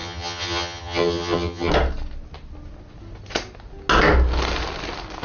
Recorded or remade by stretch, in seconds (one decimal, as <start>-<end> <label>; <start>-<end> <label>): 0.0-1.7 remade; 1.7-5.2 recorded